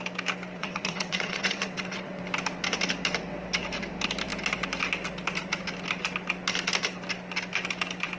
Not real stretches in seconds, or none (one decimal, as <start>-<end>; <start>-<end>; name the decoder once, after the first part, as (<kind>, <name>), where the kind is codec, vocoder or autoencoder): 0.6-2.2 (vocoder, WaveNeXt)